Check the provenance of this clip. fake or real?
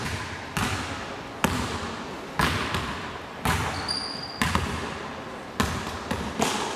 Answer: real